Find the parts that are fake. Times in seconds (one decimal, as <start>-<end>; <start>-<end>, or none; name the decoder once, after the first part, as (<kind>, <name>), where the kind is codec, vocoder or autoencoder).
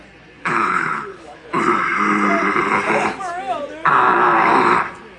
0.4-1.5 (codec, HILCodec)